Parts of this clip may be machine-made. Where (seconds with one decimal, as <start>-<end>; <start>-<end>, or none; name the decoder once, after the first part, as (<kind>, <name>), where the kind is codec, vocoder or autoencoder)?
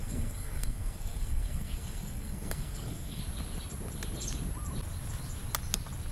0.0-3.2 (codec, SNAC)